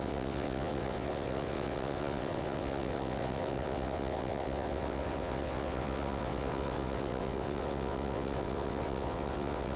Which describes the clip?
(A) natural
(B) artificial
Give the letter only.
B